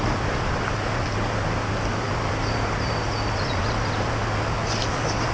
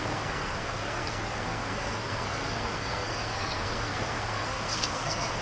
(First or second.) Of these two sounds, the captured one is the first